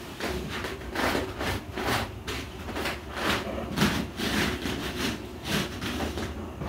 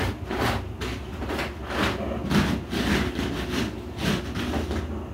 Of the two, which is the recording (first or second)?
second